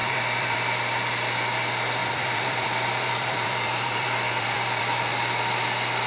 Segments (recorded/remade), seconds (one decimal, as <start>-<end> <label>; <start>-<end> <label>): 0.0-0.6 remade; 0.6-2.0 recorded; 2.0-4.8 remade; 4.8-6.1 recorded